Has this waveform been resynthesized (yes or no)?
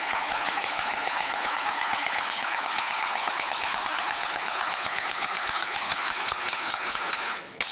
yes